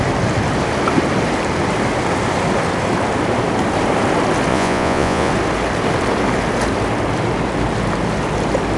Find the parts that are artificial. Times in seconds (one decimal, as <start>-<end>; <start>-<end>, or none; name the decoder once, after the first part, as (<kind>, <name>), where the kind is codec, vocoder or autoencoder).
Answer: 4.5-5.3 (vocoder, Vocos)